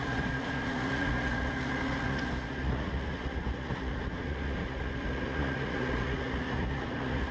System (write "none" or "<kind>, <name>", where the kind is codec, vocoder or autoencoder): vocoder, Vocos